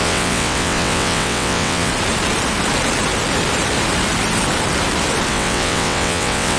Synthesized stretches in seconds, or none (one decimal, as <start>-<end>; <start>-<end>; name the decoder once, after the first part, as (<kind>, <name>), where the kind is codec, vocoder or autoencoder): 0.0-1.9 (vocoder, WaveNeXt); 5.3-6.6